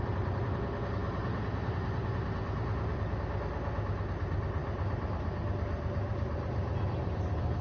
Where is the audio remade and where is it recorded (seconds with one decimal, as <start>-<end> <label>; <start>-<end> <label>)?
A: 0.0-7.6 recorded